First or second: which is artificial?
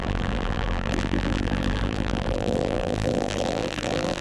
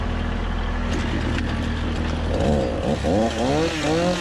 first